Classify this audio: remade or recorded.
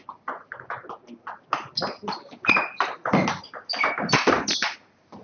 recorded